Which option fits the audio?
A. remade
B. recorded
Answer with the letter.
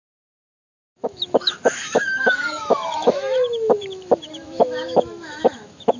A